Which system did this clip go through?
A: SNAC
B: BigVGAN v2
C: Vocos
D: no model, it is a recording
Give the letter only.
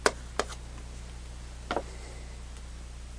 D